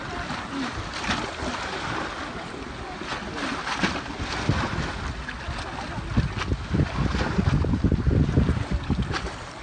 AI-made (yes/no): no